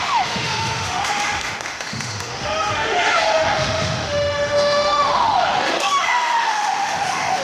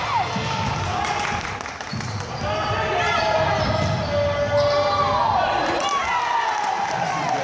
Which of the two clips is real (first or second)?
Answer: second